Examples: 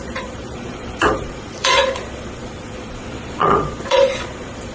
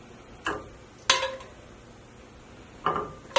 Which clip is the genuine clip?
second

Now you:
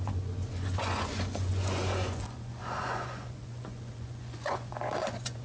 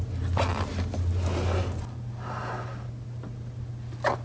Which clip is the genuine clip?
second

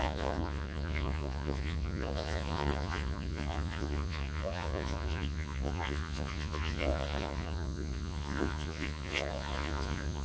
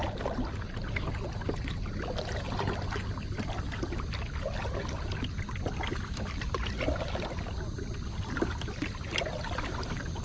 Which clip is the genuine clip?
second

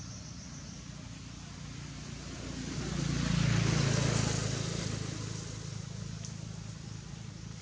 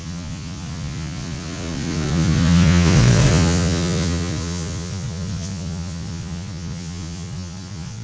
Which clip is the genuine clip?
first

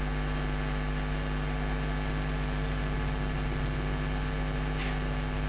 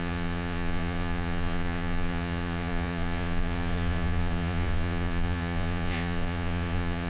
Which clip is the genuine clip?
first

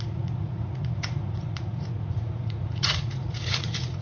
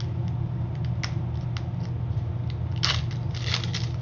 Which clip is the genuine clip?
second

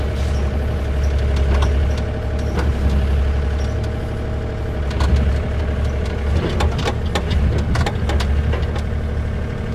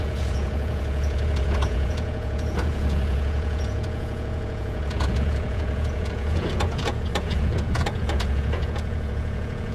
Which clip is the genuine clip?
first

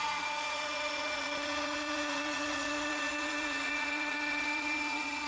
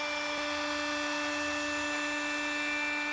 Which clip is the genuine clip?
second